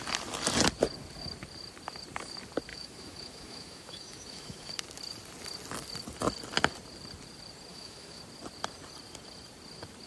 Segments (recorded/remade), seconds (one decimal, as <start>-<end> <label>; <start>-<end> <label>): 0.0-2.7 recorded; 2.7-4.7 remade; 4.7-7.7 recorded; 7.7-8.2 remade; 8.2-10.1 recorded